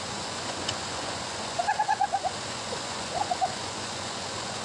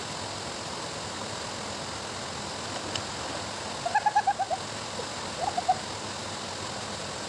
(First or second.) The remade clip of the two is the first